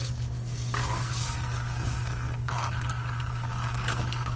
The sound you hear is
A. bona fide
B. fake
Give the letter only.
B